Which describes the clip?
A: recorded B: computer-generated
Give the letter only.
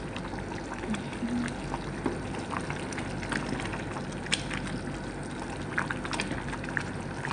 A